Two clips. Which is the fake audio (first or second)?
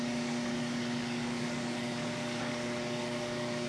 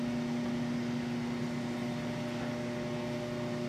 first